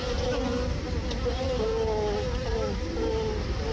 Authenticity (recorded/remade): recorded